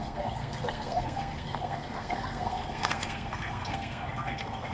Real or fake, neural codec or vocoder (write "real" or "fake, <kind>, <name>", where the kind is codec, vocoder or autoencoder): fake, codec, SNAC